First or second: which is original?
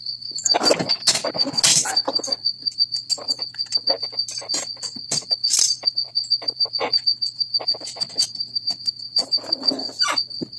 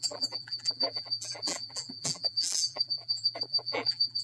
first